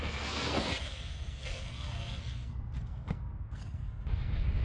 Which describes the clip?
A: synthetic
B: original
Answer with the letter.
A